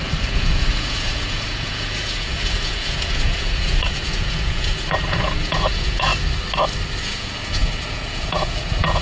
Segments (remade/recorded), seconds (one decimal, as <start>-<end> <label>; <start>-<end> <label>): 0.0-6.1 remade; 6.1-7.0 recorded; 7.0-9.0 remade